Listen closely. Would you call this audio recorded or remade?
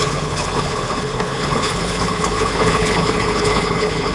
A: remade